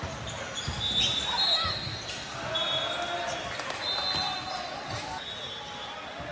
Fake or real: real